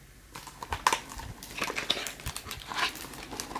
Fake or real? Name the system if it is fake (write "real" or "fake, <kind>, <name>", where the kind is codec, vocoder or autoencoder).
real